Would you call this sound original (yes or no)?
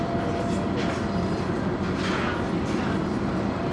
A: yes